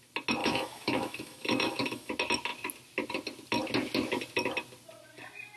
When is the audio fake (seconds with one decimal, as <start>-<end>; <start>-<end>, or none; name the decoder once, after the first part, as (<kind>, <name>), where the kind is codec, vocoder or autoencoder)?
0.4-2.1 (autoencoder, DAC-VAE)